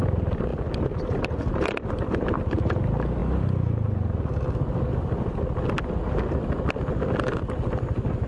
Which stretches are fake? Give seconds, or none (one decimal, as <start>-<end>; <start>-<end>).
none